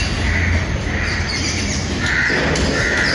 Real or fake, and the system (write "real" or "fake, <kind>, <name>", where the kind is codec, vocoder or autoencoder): real